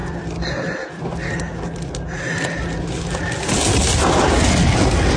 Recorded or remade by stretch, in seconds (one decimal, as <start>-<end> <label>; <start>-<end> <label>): 0.0-5.2 recorded

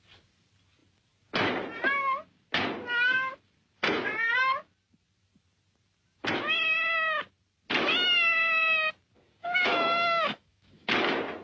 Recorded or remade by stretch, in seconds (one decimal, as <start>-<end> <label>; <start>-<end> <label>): 0.0-9.4 recorded; 9.4-10.9 remade; 10.9-11.4 recorded